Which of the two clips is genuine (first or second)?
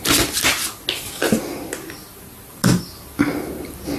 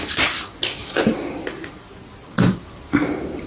first